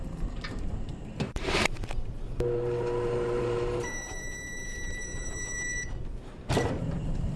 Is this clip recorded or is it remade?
remade